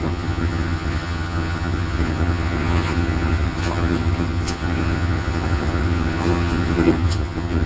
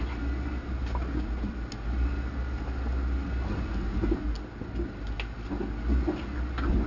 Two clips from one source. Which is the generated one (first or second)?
first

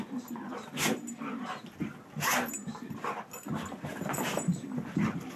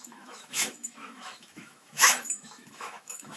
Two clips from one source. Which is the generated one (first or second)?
second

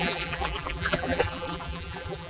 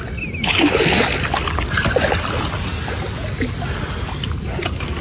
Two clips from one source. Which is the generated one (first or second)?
first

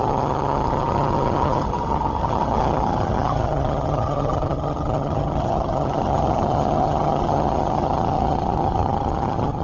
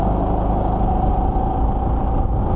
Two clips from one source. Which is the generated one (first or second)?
first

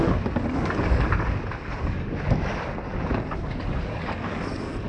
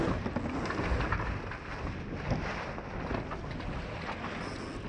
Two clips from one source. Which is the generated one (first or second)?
first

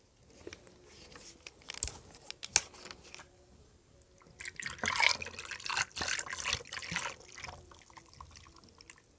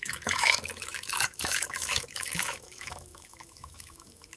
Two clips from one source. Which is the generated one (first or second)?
second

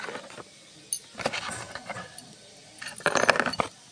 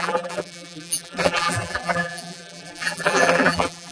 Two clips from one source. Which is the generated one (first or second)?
second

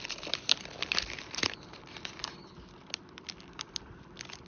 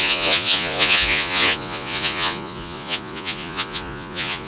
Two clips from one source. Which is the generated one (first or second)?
second